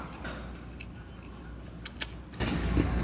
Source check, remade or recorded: recorded